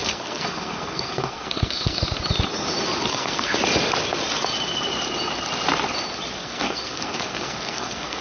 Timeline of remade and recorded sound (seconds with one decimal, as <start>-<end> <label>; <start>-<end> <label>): 0.0-2.0 remade; 2.0-3.1 recorded; 3.1-3.6 remade; 3.6-6.4 recorded; 6.4-8.2 remade